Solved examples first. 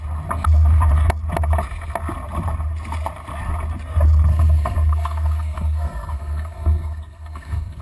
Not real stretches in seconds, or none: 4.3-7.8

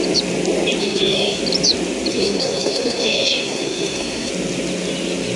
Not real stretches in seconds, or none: 0.8-1.4; 2.1-4.3

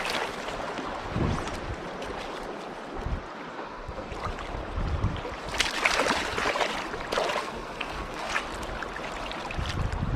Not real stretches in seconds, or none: 3.5-4.1; 7.4-8.3

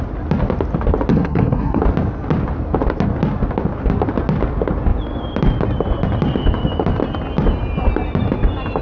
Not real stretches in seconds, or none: 1.1-1.8

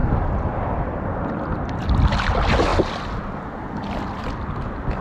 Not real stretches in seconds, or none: none

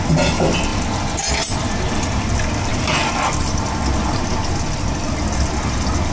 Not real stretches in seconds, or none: none